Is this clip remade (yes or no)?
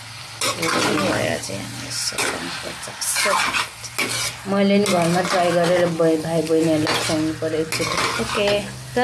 no